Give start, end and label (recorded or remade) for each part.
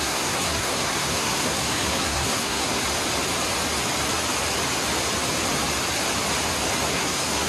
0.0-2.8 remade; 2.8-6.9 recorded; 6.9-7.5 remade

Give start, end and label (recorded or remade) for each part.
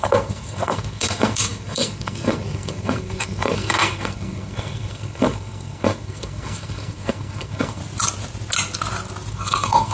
0.0-7.8 remade; 7.8-9.3 recorded; 9.3-9.9 remade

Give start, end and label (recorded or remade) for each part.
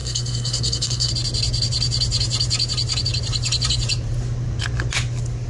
0.0-1.1 remade; 1.1-5.5 recorded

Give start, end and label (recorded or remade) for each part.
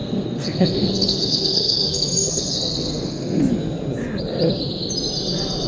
0.0-3.4 remade; 3.4-5.7 recorded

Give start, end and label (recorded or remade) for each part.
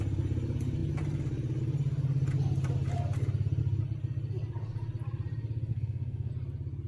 0.0-5.7 recorded; 5.7-6.3 remade; 6.3-6.9 recorded